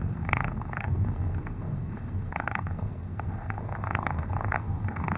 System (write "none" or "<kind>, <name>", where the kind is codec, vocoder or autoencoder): codec, SNAC